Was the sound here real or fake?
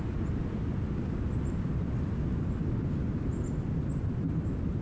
real